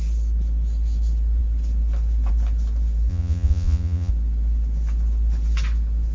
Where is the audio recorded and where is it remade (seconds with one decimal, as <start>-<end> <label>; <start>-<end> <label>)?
0.0-3.1 recorded; 3.1-4.1 remade; 4.1-6.1 recorded